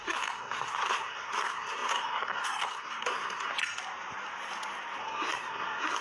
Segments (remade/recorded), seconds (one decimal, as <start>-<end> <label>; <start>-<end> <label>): 0.0-3.5 remade; 3.5-5.0 recorded; 5.0-6.0 remade